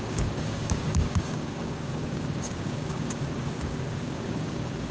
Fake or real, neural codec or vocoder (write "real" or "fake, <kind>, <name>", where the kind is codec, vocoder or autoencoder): fake, codec, DAC